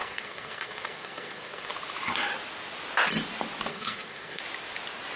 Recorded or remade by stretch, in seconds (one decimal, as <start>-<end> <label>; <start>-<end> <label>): 0.0-1.7 remade; 1.7-3.7 recorded; 3.7-4.4 remade; 4.4-5.2 recorded